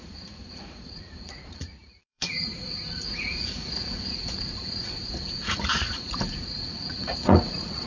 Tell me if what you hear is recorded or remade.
remade